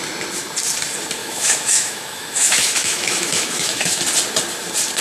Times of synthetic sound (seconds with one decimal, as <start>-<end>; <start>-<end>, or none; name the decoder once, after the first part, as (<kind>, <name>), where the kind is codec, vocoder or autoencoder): 1.2-4.0 (autoencoder, DAC-VAE)